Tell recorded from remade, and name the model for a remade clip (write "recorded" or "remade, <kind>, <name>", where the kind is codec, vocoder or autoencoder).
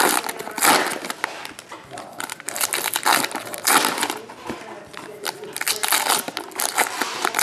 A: recorded